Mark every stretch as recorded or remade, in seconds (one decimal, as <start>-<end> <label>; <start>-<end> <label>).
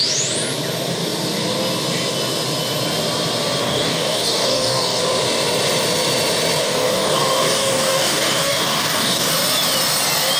0.0-3.6 recorded; 3.6-5.0 remade; 5.0-6.6 recorded; 6.6-9.3 remade; 9.3-10.4 recorded